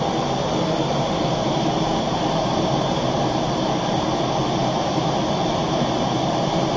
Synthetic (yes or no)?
yes